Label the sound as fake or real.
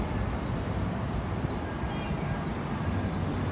real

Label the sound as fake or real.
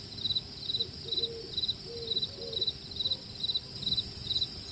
real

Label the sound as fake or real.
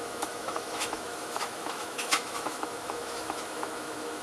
fake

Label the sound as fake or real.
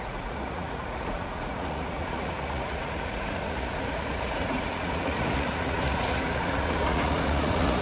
fake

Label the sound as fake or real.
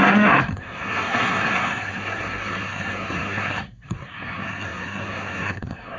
fake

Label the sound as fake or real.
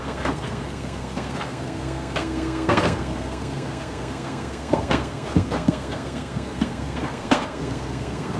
fake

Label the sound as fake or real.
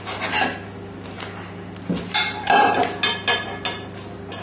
real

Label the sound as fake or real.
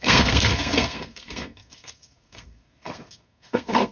fake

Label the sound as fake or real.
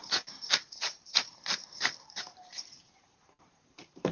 fake